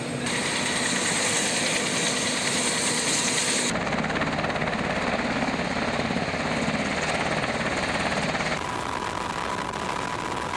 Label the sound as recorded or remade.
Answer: recorded